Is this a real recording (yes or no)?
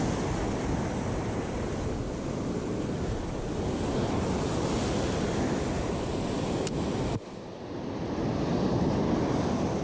yes